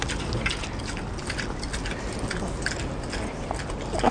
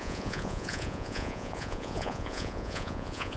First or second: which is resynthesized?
second